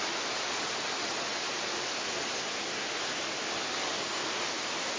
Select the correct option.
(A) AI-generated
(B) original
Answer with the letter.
B